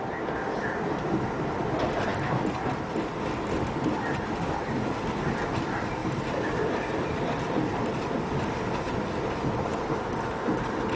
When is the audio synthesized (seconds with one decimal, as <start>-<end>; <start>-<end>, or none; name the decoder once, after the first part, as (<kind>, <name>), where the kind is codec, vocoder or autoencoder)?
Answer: 6.0-10.2 (vocoder, BigVGAN v2)